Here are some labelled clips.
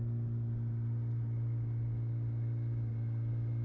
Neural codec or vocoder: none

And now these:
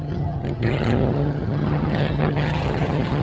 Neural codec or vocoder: vocoder, HiFi-GAN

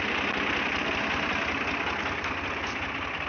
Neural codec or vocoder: none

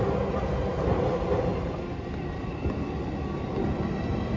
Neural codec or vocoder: none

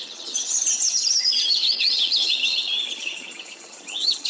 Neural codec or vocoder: vocoder, HiFi-GAN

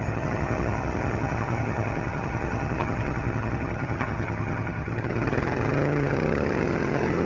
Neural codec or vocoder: vocoder, HiFi-GAN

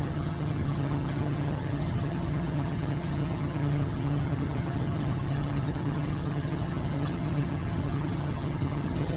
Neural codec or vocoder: vocoder, HiFi-GAN